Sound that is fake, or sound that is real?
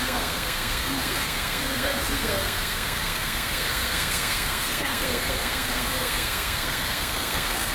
fake